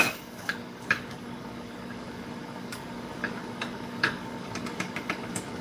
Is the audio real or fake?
fake